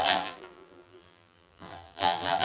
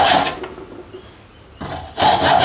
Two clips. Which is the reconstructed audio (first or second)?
first